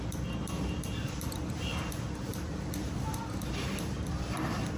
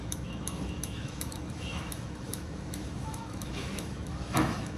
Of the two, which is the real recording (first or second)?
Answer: first